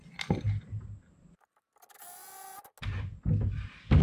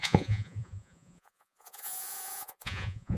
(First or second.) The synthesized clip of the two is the second